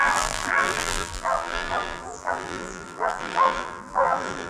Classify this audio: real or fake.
fake